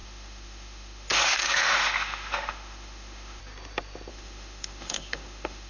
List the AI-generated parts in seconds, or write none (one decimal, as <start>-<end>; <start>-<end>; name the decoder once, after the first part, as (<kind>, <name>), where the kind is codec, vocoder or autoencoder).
0.0-3.4 (autoencoder, DAC-VAE); 4.1-5.7